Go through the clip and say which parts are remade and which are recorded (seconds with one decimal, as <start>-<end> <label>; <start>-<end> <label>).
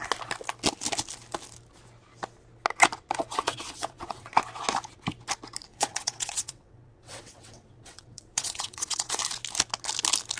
0.0-3.2 recorded; 3.2-4.3 remade; 4.3-5.7 recorded; 5.7-9.2 remade; 9.2-10.4 recorded